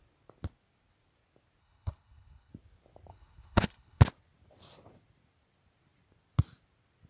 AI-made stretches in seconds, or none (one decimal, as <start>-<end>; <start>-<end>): 1.6-2.5; 3.1-4.0